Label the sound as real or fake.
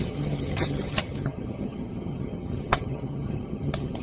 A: fake